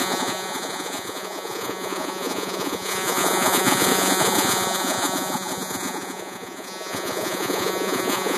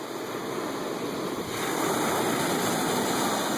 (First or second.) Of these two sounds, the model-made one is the first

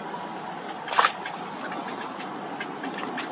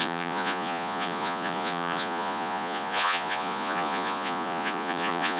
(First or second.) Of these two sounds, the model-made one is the second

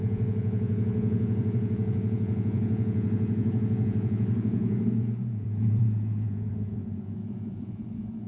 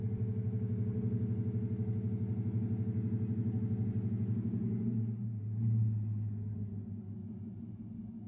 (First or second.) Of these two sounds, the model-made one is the first